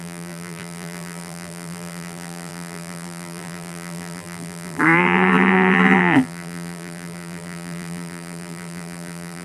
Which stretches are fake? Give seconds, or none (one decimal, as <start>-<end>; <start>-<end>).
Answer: 0.0-9.4